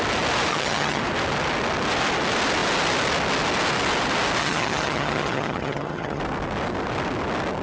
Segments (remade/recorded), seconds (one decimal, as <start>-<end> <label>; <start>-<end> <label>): 0.0-0.5 recorded; 0.5-1.0 remade; 1.0-4.4 recorded; 4.4-6.2 remade; 6.2-7.6 recorded